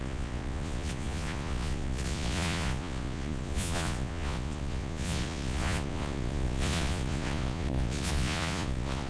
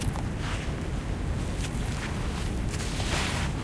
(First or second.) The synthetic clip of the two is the first